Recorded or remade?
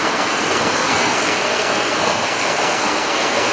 remade